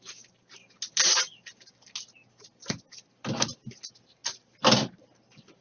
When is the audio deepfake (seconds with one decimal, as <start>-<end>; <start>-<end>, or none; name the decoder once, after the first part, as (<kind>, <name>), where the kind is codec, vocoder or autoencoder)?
none